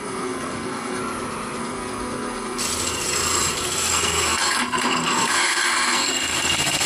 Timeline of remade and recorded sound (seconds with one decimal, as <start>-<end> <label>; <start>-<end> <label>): 0.0-1.0 remade; 1.0-1.6 recorded; 1.6-2.6 remade; 2.6-3.5 recorded; 3.5-6.9 remade